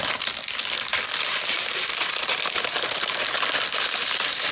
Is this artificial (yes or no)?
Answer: no